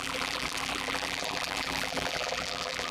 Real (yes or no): no